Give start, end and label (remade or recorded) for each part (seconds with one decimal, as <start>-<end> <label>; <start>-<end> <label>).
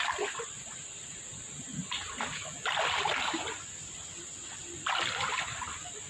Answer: 0.0-1.3 remade; 1.3-4.6 recorded; 4.6-6.1 remade